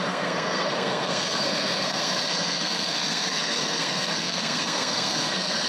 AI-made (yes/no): yes